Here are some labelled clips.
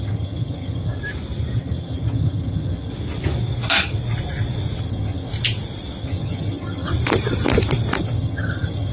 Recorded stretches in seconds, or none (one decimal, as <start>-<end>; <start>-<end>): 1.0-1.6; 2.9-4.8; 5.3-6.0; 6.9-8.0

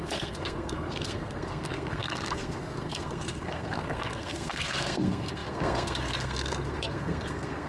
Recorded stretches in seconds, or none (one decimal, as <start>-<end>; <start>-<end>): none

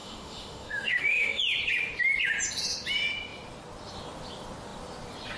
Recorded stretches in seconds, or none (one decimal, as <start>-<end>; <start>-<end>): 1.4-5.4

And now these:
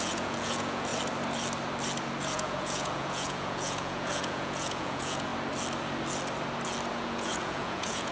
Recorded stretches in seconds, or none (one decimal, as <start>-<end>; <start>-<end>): 0.9-2.2; 5.3-6.9

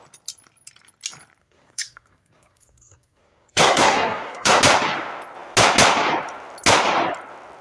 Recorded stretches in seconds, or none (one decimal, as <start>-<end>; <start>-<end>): 0.0-1.4; 4.6-7.6

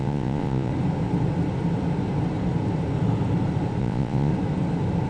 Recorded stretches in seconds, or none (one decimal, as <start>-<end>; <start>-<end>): 0.7-3.8; 4.3-5.1

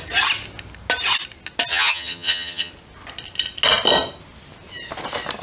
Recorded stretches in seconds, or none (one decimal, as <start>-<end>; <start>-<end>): 0.0-1.7; 2.7-5.4